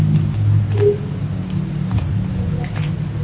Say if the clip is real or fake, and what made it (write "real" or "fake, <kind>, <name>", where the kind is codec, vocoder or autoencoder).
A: real